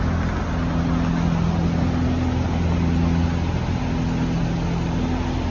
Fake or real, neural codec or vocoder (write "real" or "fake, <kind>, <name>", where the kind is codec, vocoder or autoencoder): real